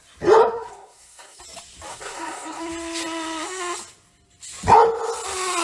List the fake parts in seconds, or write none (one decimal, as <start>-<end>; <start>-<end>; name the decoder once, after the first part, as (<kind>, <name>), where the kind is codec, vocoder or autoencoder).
0.4-1.4 (codec, SNAC); 1.9-2.7